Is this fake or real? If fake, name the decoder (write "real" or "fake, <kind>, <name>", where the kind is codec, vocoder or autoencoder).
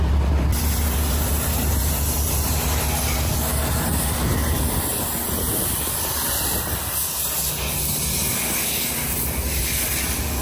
real